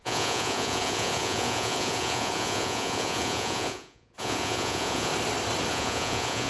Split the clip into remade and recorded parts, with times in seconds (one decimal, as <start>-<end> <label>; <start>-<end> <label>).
0.0-5.1 remade; 5.1-5.7 recorded; 5.7-6.5 remade